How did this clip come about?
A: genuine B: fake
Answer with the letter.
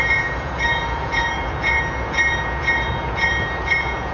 B